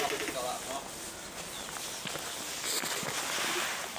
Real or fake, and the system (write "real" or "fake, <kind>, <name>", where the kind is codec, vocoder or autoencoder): real